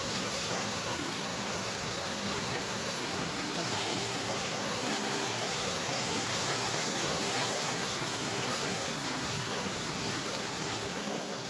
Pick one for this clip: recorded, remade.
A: remade